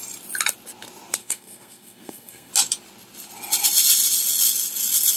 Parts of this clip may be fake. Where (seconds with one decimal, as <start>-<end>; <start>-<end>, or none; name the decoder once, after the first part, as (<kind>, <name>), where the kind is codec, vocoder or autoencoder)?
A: 1.2-2.5 (codec, SNAC)